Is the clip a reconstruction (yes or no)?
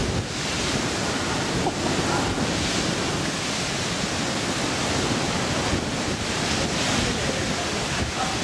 no